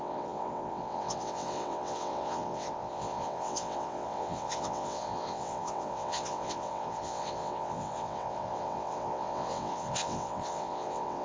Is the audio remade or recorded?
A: remade